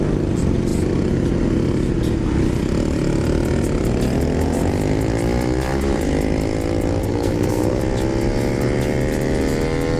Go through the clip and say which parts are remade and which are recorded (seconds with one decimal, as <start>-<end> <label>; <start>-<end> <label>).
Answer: 0.0-7.0 recorded; 7.0-7.8 remade; 7.8-10.0 recorded